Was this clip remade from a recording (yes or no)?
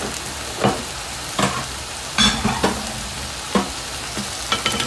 no